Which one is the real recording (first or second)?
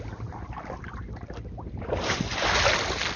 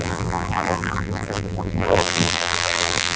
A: first